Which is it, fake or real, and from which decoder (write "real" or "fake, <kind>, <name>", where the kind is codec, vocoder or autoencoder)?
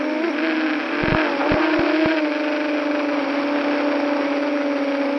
real